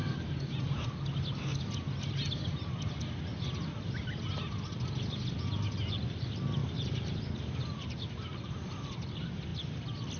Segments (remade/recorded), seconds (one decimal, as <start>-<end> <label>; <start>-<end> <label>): 0.0-0.6 remade; 0.6-6.6 recorded; 6.6-8.5 remade; 8.5-10.2 recorded